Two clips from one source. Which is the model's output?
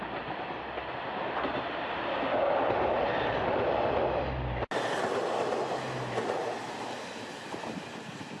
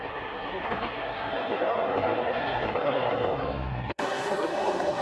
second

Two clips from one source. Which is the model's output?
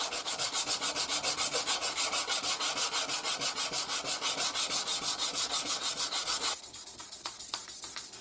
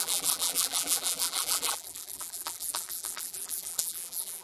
second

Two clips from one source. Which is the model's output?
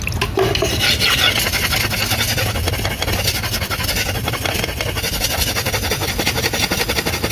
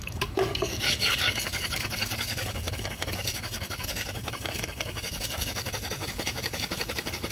second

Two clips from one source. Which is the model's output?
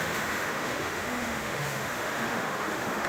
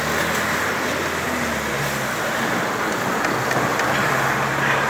first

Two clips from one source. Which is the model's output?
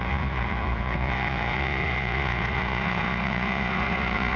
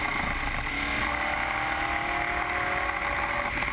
first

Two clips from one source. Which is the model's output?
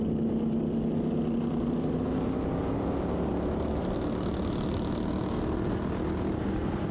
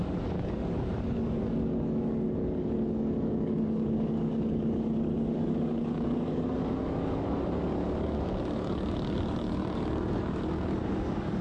second